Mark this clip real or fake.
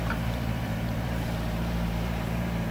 fake